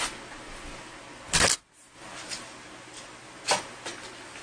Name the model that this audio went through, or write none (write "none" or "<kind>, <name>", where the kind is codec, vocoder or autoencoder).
none